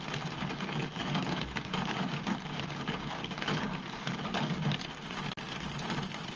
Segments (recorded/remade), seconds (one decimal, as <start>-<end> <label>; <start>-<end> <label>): 0.0-0.8 recorded; 0.8-4.6 remade; 4.6-6.4 recorded